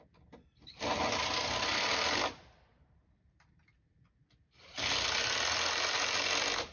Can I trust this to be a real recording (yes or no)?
yes